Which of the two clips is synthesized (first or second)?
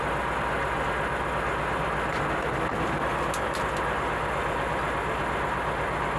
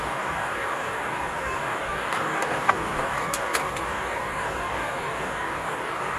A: second